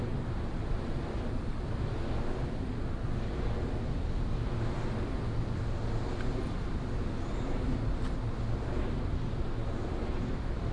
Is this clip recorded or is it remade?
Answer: recorded